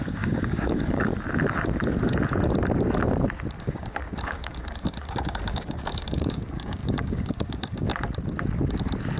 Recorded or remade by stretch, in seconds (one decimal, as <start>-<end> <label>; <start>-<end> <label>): 0.0-1.1 remade; 1.1-3.6 recorded; 3.6-7.9 remade; 7.9-9.2 recorded